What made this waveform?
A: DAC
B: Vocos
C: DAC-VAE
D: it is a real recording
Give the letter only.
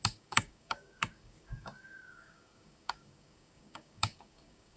A